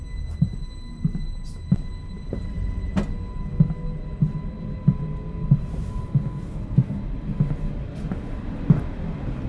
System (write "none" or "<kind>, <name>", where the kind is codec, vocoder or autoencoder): none